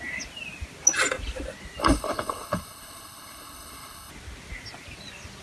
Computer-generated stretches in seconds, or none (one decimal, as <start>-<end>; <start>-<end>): 1.8-4.1